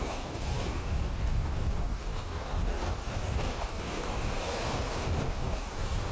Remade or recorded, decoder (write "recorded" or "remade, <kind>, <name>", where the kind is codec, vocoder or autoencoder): remade, codec, DAC